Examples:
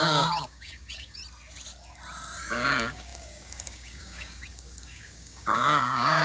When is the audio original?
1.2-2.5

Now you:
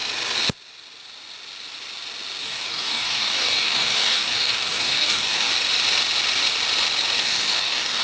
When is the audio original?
0.0-2.4; 5.5-7.2

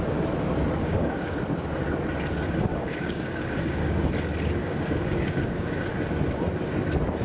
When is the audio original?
0.0-0.8; 1.4-2.7; 4.1-4.6; 5.8-7.2

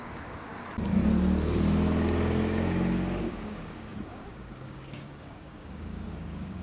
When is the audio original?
0.5-3.2